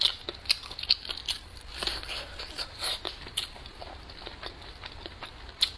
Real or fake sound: real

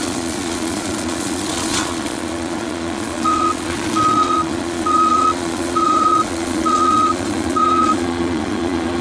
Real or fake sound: fake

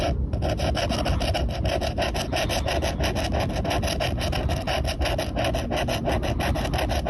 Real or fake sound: real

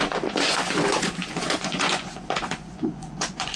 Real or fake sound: fake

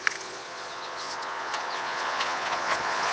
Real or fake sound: fake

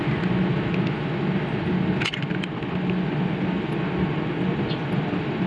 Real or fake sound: real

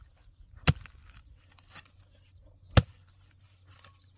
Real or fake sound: real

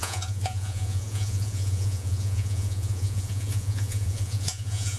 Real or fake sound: fake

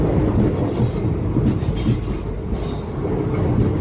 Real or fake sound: real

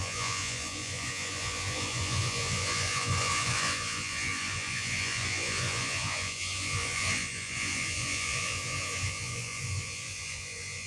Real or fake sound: fake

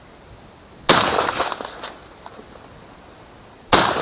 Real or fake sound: real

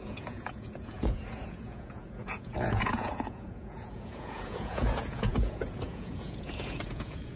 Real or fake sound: fake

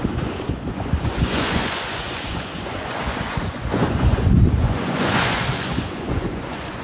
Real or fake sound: fake